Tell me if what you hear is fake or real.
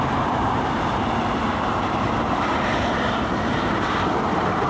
fake